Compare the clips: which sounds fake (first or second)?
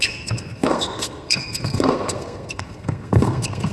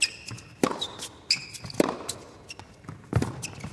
first